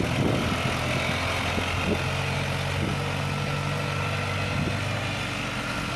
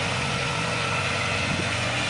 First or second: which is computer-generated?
second